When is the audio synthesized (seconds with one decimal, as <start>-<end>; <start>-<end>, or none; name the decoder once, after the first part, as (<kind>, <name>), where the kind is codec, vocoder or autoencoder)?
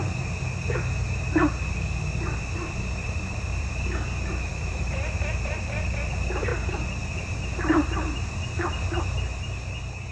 3.0-3.7 (vocoder, BigVGAN v2); 4.5-5.9; 6.5-7.0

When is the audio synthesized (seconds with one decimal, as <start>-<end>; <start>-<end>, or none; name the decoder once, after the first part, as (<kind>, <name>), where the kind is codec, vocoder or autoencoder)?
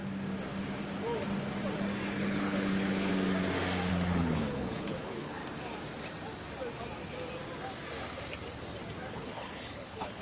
2.2-3.1 (codec, HILCodec); 3.9-5.4; 9.1-10.2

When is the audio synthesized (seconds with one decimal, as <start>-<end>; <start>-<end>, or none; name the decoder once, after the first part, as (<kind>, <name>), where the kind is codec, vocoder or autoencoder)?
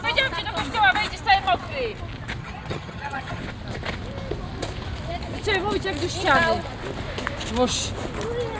2.4-3.4 (vocoder, HiFi-GAN)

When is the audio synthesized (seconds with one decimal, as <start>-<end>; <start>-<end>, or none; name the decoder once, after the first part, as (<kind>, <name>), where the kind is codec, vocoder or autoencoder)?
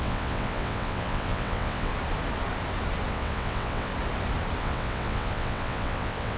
0.0-1.9 (vocoder, WaveNeXt); 3.1-3.9; 4.6-6.4